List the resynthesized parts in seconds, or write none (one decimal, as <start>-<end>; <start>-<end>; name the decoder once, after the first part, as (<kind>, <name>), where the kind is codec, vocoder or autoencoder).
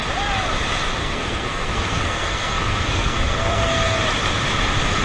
1.0-4.0 (codec, SNAC)